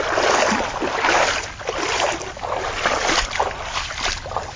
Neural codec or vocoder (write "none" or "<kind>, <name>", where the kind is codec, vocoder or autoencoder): none